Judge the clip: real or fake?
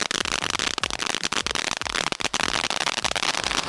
real